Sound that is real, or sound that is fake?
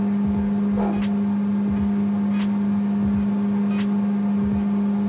real